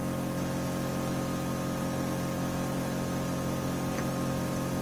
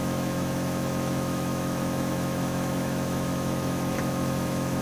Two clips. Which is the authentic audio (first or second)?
first